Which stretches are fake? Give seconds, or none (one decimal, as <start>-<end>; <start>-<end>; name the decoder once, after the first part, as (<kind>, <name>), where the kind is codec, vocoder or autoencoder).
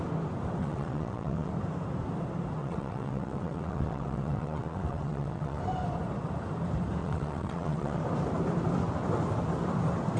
0.6-1.5 (vocoder, WaveNeXt); 2.6-5.6; 7.0-8.0